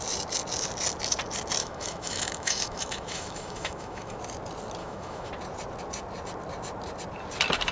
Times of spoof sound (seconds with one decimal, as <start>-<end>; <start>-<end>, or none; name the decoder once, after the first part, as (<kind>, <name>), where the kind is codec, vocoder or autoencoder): 1.6-4.2 (autoencoder, DAC-VAE); 4.8-5.3